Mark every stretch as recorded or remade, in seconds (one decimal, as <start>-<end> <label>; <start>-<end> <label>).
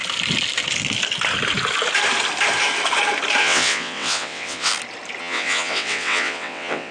0.0-3.4 recorded; 3.4-4.7 remade; 4.7-5.2 recorded; 5.2-6.9 remade